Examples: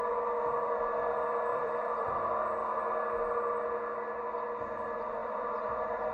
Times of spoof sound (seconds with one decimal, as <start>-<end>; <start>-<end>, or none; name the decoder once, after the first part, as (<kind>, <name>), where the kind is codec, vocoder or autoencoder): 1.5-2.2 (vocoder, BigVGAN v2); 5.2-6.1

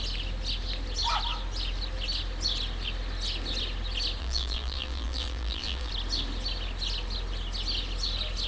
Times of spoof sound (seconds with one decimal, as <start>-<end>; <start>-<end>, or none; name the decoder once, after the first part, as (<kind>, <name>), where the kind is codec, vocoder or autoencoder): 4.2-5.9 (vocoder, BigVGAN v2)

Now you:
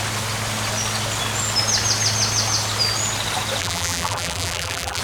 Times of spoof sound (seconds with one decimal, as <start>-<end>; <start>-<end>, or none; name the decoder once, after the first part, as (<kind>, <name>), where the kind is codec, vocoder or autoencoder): 3.6-5.0 (vocoder, BigVGAN v2)